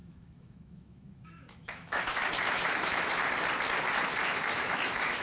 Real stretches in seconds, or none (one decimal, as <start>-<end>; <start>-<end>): 3.2-4.2